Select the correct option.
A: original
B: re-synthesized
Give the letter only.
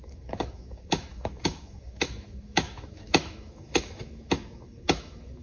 B